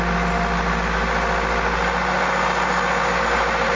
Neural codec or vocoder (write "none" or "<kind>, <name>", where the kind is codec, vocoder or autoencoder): none